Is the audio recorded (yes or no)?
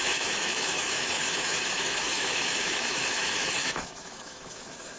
no